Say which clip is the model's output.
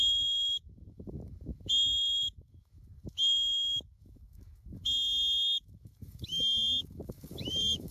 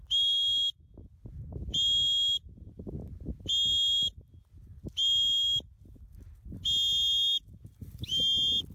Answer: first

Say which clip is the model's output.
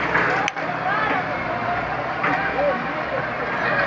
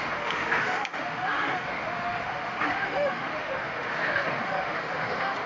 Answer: second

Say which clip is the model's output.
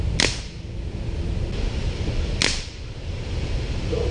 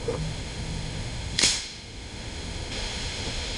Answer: second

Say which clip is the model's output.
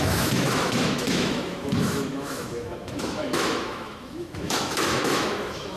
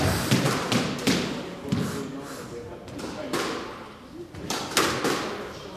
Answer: first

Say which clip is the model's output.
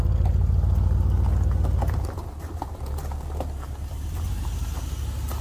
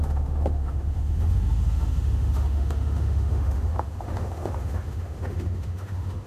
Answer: second